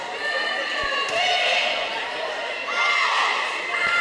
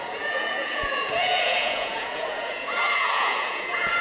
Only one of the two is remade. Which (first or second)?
second